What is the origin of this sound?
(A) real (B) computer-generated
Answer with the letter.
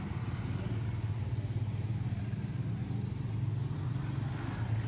A